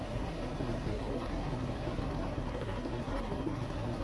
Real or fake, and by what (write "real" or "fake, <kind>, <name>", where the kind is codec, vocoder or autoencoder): fake, codec, SNAC